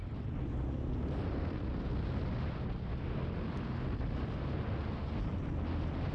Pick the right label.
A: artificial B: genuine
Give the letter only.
B